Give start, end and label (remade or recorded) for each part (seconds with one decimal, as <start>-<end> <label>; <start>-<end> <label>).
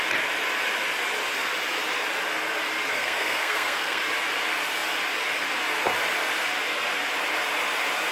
0.0-2.9 recorded; 2.9-4.0 remade; 4.0-8.1 recorded